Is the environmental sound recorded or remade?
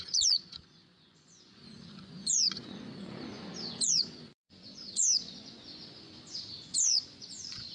remade